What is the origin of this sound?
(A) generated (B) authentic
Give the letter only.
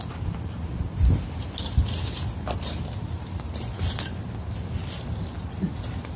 B